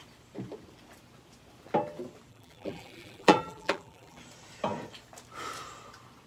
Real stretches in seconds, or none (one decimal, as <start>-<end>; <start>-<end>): 0.0-2.3; 4.2-6.3